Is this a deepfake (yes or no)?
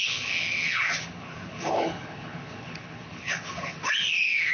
yes